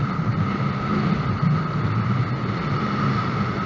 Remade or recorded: recorded